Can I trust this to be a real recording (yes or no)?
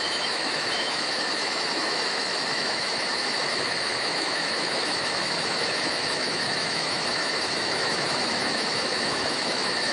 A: no